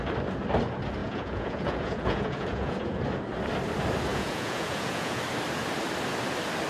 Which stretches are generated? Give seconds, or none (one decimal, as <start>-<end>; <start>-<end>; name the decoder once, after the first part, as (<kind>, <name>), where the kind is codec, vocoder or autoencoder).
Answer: 1.0-3.0 (vocoder, Vocos); 4.1-5.2